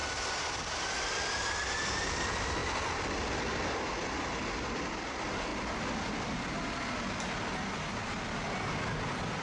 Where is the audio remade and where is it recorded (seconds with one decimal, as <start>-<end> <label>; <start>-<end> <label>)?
0.0-1.0 recorded; 1.0-2.6 remade; 2.6-4.9 recorded; 4.9-5.5 remade; 5.5-8.9 recorded; 8.9-9.4 remade